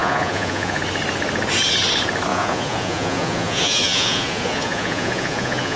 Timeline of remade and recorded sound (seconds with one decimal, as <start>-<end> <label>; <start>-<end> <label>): 0.0-0.8 remade; 0.8-2.3 recorded; 2.3-5.8 remade